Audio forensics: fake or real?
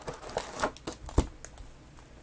real